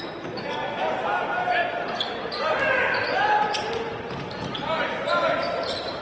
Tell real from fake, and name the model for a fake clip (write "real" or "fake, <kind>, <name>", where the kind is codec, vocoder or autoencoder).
real